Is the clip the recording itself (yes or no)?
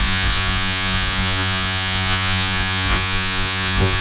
no